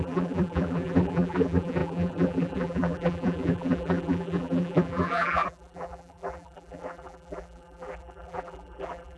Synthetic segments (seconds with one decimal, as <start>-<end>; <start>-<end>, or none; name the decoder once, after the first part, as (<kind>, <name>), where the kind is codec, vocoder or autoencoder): 0.0-9.2 (vocoder, BigVGAN v2)